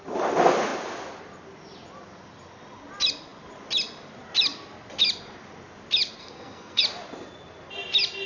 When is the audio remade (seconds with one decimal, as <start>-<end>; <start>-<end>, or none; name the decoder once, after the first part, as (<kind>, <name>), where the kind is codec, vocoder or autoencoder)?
6.2-6.8 (codec, SNAC)